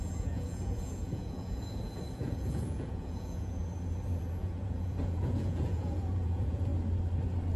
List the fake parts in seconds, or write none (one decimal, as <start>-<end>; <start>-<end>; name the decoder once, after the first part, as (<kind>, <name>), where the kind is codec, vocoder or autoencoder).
0.0-3.6 (vocoder, Vocos); 4.2-6.7